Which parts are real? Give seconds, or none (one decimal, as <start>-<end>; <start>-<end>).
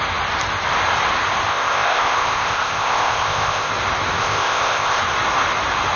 0.0-1.5; 3.7-4.2; 5.0-6.0